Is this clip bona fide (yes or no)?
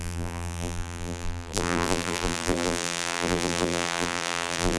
no